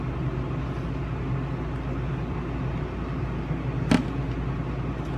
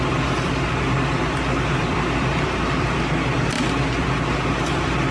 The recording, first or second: first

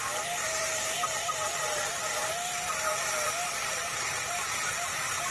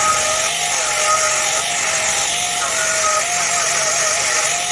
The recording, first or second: second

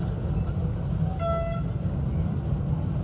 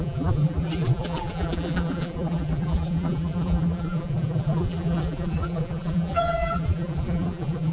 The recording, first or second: first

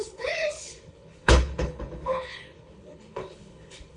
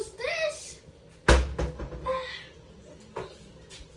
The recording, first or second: second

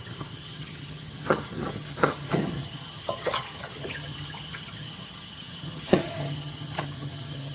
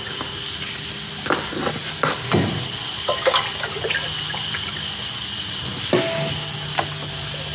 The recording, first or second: second